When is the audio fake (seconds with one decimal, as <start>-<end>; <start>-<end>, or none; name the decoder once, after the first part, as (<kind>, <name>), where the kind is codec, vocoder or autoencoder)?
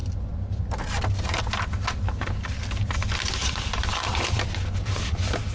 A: 0.0-1.4 (vocoder, BigVGAN v2); 3.4-4.8